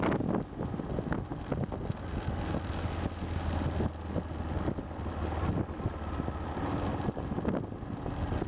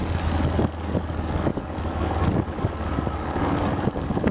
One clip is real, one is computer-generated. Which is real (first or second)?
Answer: first